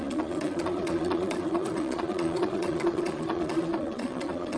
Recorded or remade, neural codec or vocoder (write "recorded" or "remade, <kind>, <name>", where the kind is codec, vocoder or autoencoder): remade, vocoder, Vocos